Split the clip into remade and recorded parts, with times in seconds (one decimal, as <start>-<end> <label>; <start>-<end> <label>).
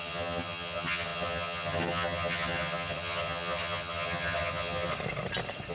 0.0-4.9 remade; 4.9-5.7 recorded